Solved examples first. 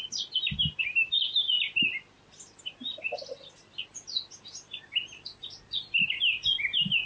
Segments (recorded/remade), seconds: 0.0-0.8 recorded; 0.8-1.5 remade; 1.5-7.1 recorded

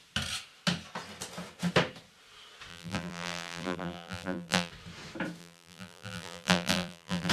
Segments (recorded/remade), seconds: 0.0-2.7 recorded; 2.7-4.7 remade; 4.7-5.4 recorded; 5.4-7.3 remade

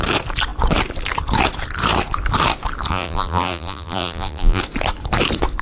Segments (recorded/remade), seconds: 0.0-2.9 recorded; 2.9-4.6 remade; 4.6-5.6 recorded

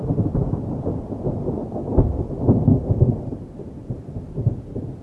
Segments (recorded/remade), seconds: 0.0-3.3 recorded; 3.3-3.9 remade; 3.9-5.0 recorded

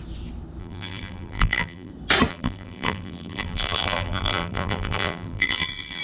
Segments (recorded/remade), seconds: 0.0-0.6 recorded; 0.6-1.9 remade; 1.9-2.3 recorded; 2.3-6.0 remade

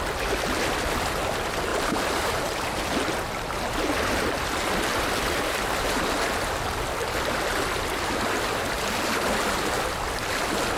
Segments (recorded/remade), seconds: 0.0-1.7 recorded; 1.7-2.4 remade; 2.4-10.8 recorded

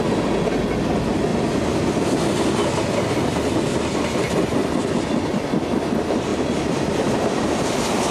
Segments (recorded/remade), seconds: 0.0-1.3 recorded; 1.3-2.1 remade; 2.1-4.6 recorded; 4.6-5.8 remade; 5.8-6.3 recorded; 6.3-7.1 remade; 7.1-8.1 recorded